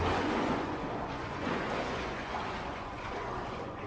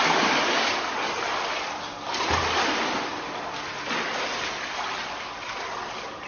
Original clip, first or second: second